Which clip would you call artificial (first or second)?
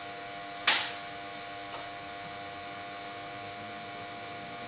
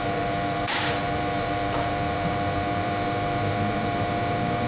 second